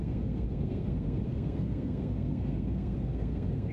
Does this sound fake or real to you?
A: fake